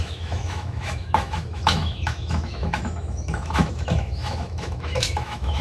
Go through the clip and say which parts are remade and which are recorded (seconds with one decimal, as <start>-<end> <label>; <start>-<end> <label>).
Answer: 0.0-5.6 remade